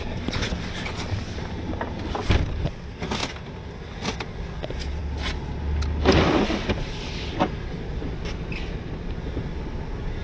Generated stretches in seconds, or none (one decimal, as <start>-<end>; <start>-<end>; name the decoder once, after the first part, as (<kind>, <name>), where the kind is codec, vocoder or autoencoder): none